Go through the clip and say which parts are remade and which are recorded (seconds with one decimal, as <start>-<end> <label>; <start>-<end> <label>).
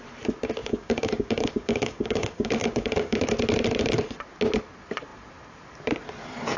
0.0-0.6 recorded; 0.6-3.2 remade; 3.2-6.6 recorded